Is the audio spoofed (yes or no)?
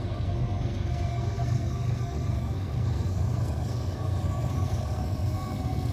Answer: yes